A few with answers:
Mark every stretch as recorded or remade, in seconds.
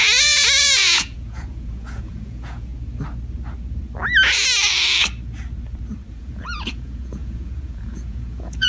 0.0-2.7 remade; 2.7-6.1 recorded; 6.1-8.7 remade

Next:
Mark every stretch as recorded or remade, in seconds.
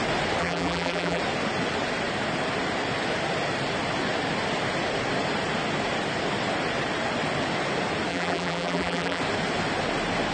0.0-0.4 recorded; 0.4-1.2 remade; 1.2-8.1 recorded; 8.1-9.2 remade; 9.2-10.3 recorded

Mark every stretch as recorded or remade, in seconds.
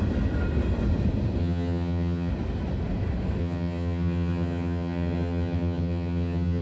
0.0-1.4 recorded; 1.4-2.3 remade; 2.3-3.4 recorded; 3.4-6.6 remade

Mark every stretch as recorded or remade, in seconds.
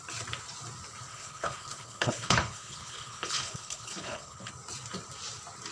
0.0-1.1 recorded; 1.1-4.5 remade; 4.5-5.7 recorded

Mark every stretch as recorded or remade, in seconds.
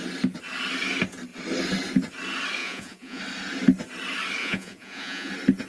0.0-2.6 recorded; 2.6-3.2 remade; 3.2-4.4 recorded; 4.4-5.3 remade; 5.3-5.7 recorded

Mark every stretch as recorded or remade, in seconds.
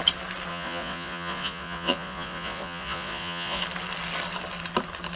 0.0-0.5 recorded; 0.5-3.6 remade; 3.6-5.2 recorded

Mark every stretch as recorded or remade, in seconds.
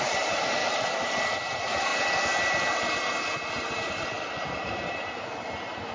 0.0-0.6 remade; 0.6-1.5 recorded; 1.5-1.9 remade; 1.9-3.5 recorded; 3.5-5.9 remade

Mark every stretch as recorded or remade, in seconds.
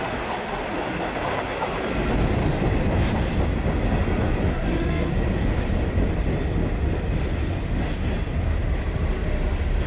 0.0-4.5 recorded; 4.5-5.1 remade; 5.1-9.9 recorded